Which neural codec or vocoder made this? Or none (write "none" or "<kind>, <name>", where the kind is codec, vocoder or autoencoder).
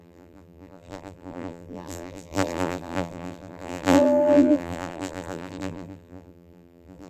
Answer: vocoder, BigVGAN v2